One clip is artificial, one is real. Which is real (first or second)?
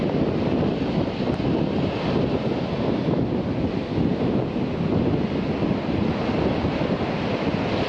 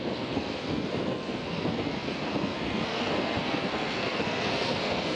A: first